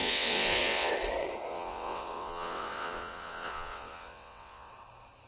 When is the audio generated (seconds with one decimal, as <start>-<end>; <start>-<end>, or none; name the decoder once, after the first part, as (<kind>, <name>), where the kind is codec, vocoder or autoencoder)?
0.0-0.9 (vocoder, WaveNeXt); 1.5-4.7